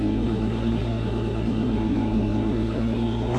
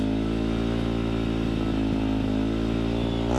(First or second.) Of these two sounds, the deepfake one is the first